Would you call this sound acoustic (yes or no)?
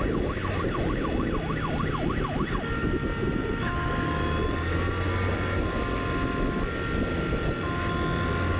yes